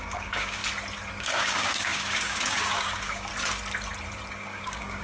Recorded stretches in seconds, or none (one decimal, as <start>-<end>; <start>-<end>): 0.6-1.2; 3.3-4.3